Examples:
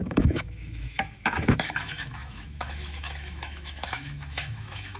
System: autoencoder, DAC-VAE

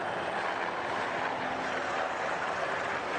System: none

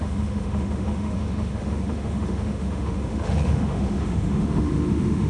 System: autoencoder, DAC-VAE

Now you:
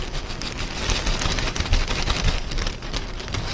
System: none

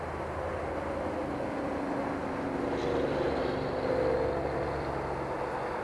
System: none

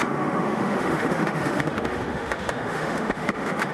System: autoencoder, DAC-VAE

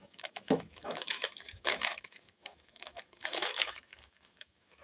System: autoencoder, DAC-VAE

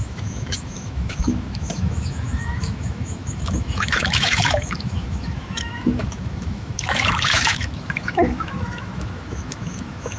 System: autoencoder, DAC-VAE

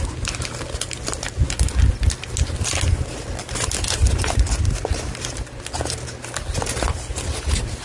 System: none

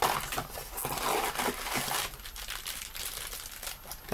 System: none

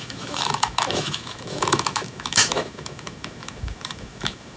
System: autoencoder, DAC-VAE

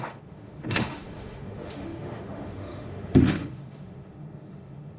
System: autoencoder, DAC-VAE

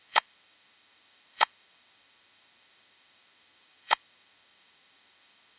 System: autoencoder, DAC-VAE